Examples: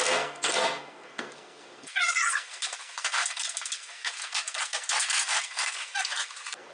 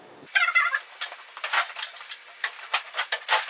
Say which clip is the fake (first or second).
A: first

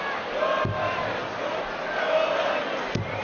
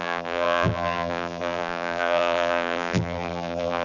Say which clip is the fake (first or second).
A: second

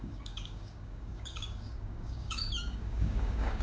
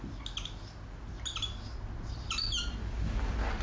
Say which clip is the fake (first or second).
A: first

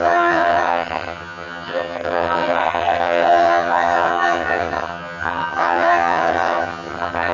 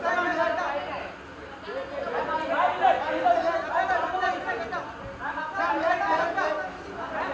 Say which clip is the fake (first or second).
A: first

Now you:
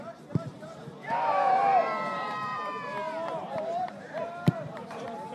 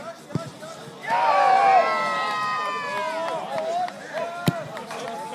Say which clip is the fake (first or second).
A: first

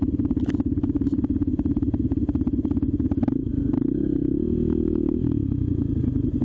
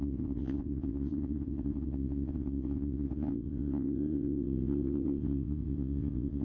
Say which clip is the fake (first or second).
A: second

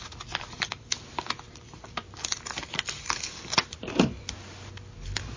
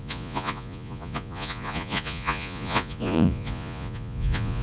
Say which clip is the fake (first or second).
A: second